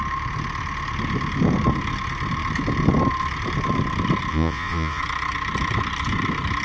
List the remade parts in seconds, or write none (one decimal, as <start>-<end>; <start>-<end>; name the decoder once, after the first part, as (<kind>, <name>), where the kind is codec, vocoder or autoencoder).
4.3-5.0 (vocoder, Vocos)